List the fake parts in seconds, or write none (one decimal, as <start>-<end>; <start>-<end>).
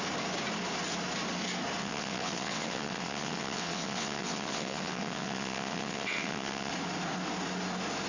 1.8-6.7